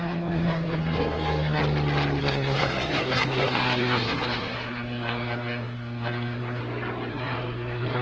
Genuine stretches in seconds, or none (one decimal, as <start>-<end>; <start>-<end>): 1.6-2.2; 6.6-7.1